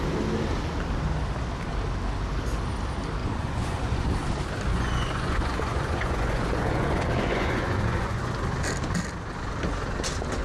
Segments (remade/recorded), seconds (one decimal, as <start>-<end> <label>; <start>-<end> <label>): 0.0-3.2 recorded; 3.2-4.1 remade; 4.1-4.7 recorded; 4.7-8.3 remade; 8.3-10.4 recorded